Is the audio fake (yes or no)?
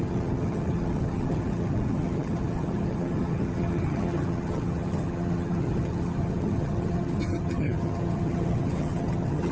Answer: yes